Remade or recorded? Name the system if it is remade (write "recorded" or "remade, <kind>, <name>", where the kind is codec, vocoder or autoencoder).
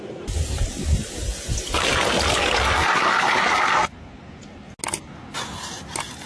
recorded